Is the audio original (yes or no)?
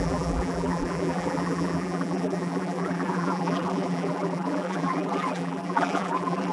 no